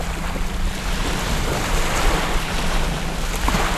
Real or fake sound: real